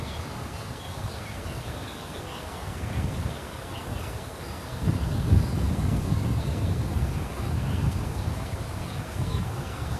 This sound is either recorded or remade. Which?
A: remade